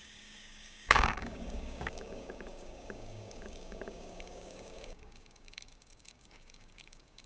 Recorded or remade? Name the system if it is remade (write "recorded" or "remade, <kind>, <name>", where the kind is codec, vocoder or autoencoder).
remade, codec, DAC